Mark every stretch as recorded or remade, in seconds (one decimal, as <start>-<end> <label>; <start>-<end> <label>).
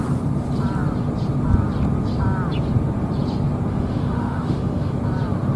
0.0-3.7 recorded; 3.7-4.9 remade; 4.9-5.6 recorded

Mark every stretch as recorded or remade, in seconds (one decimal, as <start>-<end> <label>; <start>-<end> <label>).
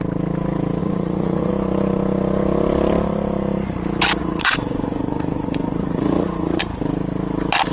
0.0-0.8 recorded; 0.8-1.5 remade; 1.5-4.2 recorded; 4.2-6.6 remade; 6.6-7.7 recorded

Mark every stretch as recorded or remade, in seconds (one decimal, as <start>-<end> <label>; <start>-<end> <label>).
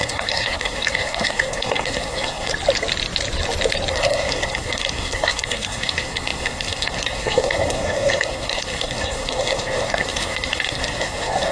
0.0-2.5 remade; 2.5-3.9 recorded; 3.9-11.5 remade